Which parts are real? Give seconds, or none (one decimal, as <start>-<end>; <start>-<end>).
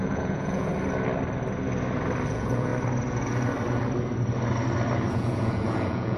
0.7-2.3; 2.7-5.1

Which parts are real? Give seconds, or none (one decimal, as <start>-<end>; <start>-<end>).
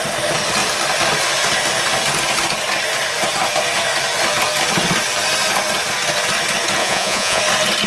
0.0-6.8; 7.4-7.9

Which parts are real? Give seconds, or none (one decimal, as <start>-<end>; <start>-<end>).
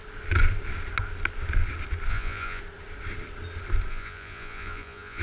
0.0-2.1; 2.6-3.9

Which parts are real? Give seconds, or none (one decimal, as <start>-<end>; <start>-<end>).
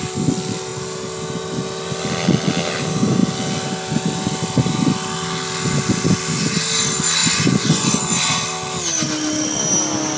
0.0-7.2; 8.3-10.2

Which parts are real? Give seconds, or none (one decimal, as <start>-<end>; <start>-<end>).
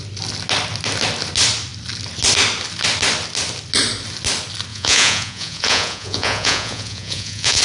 0.0-4.7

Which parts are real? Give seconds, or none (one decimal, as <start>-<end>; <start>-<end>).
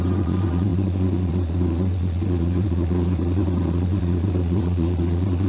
none